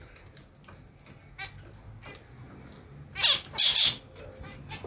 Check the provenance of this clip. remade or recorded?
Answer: recorded